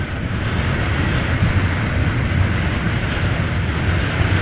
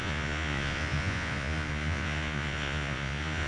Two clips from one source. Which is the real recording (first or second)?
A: first